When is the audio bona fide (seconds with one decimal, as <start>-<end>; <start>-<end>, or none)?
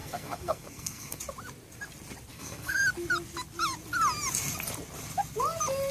1.2-2.3; 2.8-5.9